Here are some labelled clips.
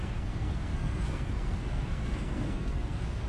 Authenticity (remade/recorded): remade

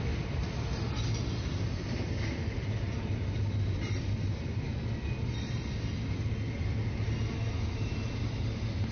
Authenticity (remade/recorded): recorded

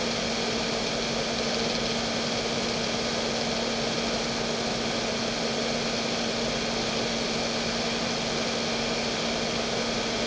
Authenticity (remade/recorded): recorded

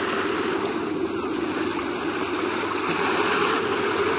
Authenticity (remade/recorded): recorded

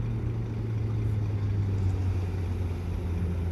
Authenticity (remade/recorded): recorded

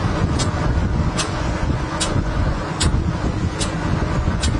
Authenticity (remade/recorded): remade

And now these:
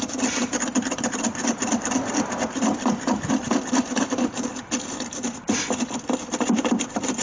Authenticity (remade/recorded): remade